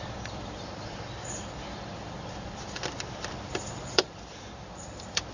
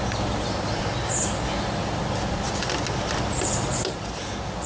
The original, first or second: second